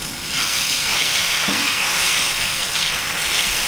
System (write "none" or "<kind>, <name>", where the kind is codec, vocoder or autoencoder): codec, SNAC